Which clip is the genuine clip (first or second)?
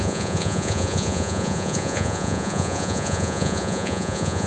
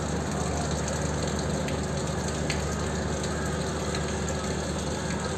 second